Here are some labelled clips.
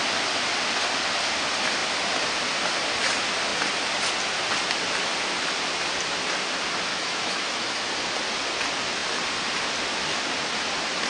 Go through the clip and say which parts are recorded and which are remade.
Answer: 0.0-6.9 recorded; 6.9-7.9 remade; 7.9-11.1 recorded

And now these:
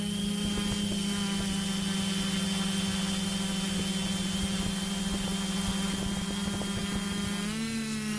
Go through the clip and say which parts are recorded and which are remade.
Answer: 0.0-8.2 recorded

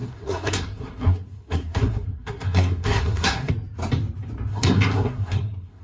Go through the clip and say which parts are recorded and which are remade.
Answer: 0.0-3.5 remade; 3.5-4.5 recorded; 4.5-5.8 remade

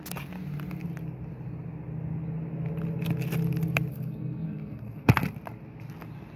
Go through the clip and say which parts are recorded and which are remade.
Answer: 0.0-3.9 recorded; 3.9-5.1 remade; 5.1-6.4 recorded

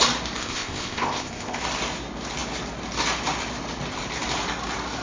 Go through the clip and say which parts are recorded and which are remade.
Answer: 0.0-0.4 recorded; 0.4-1.6 remade; 1.6-5.0 recorded

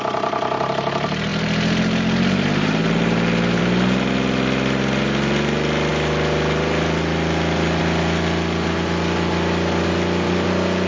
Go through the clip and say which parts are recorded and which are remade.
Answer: 0.0-10.9 recorded

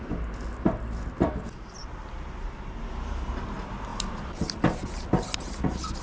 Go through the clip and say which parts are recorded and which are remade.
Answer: 0.0-3.9 recorded; 3.9-4.8 remade; 4.8-6.0 recorded

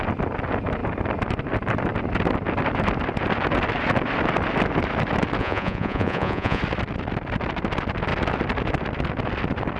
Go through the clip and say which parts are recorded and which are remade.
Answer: 0.0-5.4 recorded; 5.4-6.6 remade; 6.6-9.8 recorded